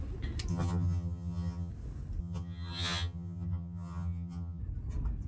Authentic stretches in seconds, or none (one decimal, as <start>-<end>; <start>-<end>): 0.0-0.5; 1.7-2.2; 4.6-5.3